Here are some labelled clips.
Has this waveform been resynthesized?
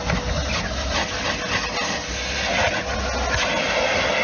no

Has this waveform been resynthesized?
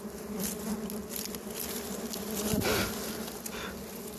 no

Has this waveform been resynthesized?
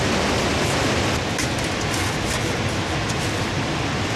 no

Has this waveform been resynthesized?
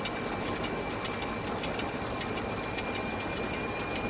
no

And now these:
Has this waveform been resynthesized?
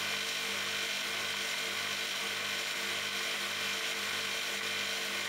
no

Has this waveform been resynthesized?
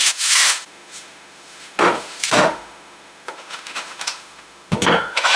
yes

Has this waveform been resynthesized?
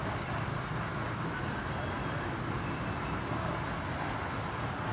no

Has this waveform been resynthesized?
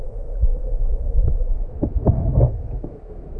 yes